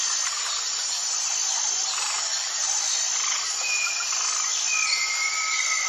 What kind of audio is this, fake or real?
real